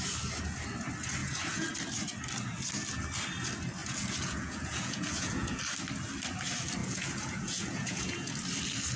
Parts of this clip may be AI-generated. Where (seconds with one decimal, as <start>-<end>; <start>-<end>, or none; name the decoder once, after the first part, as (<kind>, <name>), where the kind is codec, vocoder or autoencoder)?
1.2-1.7 (vocoder, Vocos); 3.8-5.6; 6.8-8.3